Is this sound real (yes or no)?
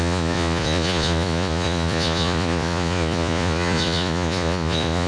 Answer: no